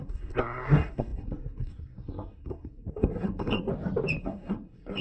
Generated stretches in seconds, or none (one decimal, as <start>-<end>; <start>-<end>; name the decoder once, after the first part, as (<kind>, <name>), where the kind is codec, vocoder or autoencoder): 0.0-3.7 (codec, SNAC); 4.2-5.0